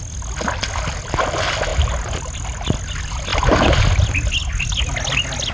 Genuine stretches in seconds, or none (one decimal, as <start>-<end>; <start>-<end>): 0.0-5.5